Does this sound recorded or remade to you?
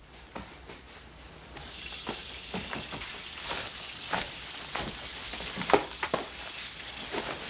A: recorded